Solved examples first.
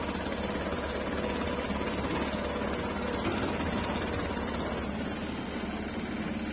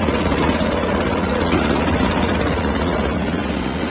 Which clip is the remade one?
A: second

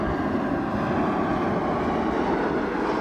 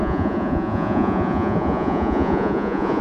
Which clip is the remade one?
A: second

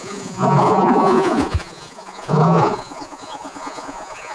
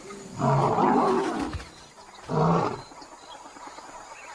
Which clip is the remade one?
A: first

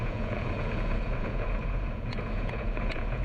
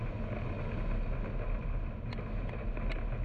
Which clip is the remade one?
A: first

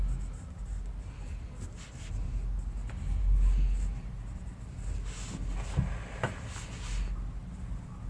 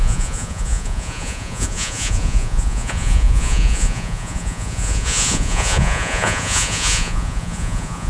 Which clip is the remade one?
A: second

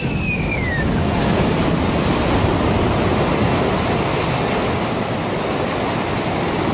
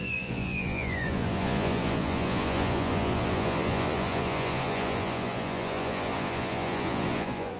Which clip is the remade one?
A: second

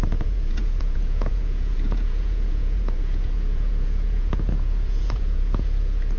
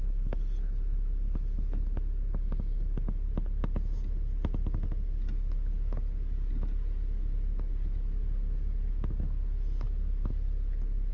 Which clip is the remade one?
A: first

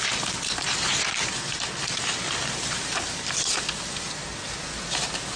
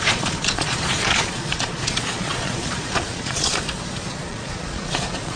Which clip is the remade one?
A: second